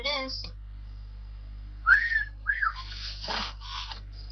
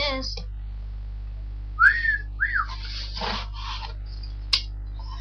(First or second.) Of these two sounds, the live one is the second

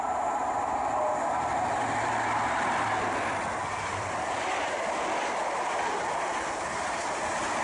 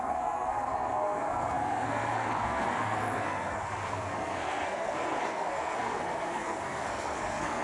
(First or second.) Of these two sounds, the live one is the first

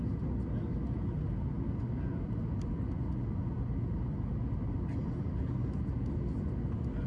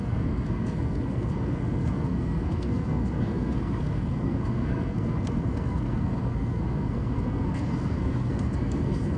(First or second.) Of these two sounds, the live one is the first